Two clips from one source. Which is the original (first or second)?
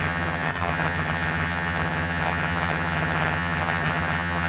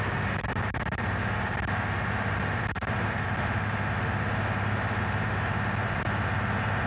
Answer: second